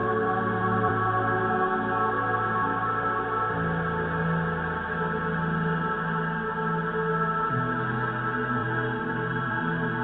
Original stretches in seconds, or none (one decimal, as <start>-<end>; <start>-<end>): 0.9-8.6; 9.6-10.0